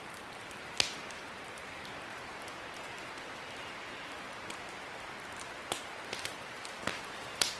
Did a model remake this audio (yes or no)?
yes